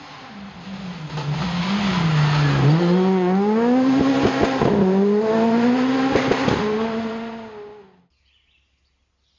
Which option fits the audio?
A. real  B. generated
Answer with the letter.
A